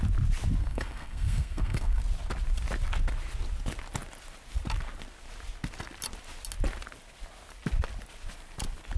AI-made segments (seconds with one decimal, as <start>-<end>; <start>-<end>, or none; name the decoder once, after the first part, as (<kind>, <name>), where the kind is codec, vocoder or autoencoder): 0.6-2.0 (codec, SNAC)